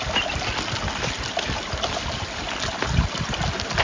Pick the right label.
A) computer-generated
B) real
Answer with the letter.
B